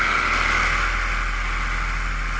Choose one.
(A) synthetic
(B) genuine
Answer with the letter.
B